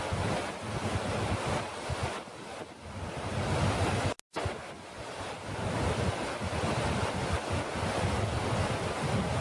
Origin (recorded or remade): recorded